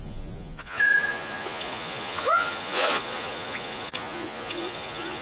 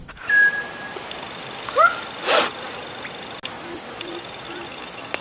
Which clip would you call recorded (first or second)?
second